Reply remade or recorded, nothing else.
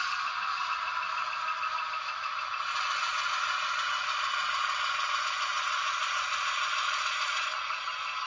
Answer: recorded